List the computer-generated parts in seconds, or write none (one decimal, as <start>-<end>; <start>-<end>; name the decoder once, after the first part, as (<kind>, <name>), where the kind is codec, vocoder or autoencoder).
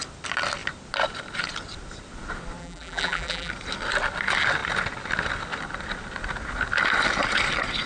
2.6-3.5 (vocoder, BigVGAN v2)